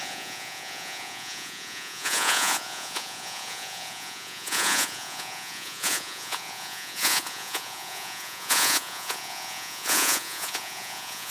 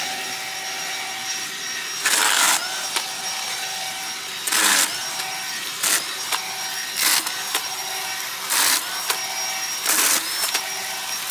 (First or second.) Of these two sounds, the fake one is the first